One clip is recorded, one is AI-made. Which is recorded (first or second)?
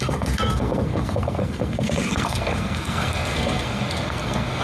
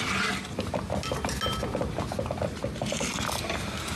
second